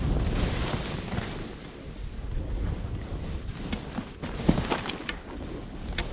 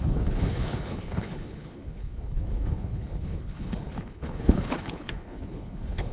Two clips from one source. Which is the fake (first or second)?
second